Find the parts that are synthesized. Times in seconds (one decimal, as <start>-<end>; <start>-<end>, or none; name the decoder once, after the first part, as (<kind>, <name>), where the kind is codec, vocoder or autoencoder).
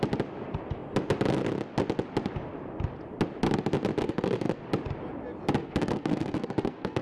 4.0-4.6 (codec, SNAC); 5.6-7.0